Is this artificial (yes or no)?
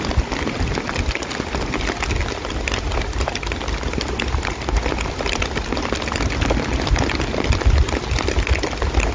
no